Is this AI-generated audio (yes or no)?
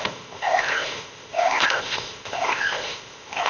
yes